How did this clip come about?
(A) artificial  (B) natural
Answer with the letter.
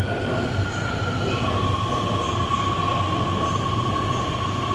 B